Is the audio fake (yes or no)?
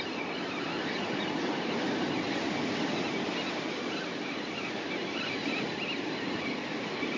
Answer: no